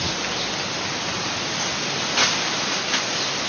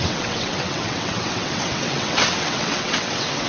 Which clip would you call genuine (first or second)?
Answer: first